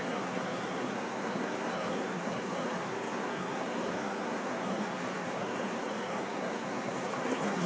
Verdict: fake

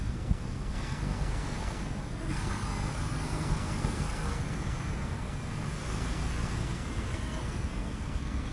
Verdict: fake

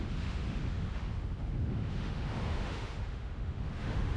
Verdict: fake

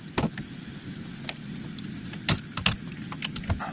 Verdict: real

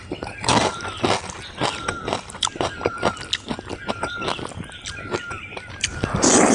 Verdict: real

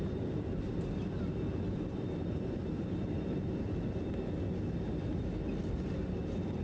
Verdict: real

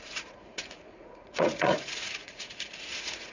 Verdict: fake